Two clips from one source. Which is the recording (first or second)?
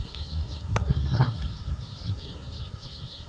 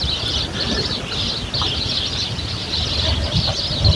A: second